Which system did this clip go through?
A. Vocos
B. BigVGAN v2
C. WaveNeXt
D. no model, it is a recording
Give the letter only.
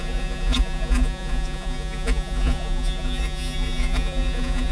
A